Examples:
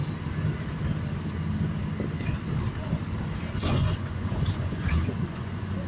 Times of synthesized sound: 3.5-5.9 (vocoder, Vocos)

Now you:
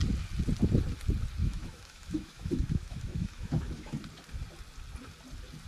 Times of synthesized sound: 1.4-4.0 (autoencoder, DAC-VAE)

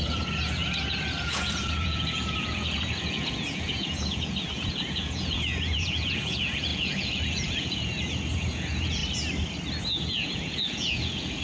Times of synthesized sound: 0.0-9.0 (vocoder, Vocos); 9.8-11.4

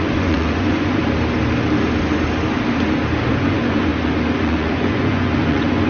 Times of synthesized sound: 0.0-1.0 (vocoder, Vocos); 3.3-3.9; 4.4-5.9

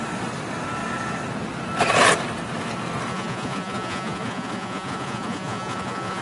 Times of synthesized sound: 3.1-6.2 (vocoder, Vocos)

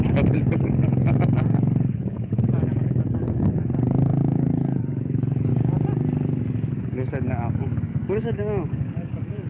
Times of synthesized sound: 0.0-5.5 (codec, DAC); 6.8-9.5

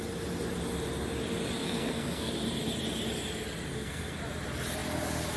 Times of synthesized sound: 1.6-2.3 (codec, SNAC); 3.7-4.2